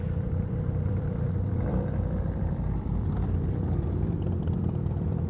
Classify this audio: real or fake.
fake